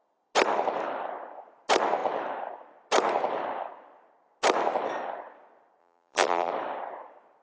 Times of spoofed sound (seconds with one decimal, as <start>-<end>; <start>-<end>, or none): 5.8-6.5